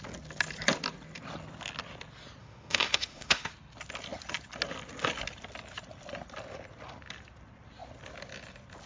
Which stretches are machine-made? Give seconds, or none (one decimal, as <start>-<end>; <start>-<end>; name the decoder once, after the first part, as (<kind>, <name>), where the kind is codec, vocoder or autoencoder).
2.4-3.5 (autoencoder, DAC-VAE)